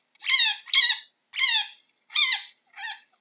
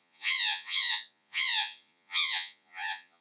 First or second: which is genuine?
first